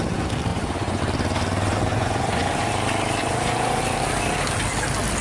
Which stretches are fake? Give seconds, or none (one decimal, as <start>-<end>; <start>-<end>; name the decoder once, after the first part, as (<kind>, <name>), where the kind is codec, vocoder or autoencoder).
0.5-1.0 (vocoder, Vocos); 1.9-2.7; 3.2-3.8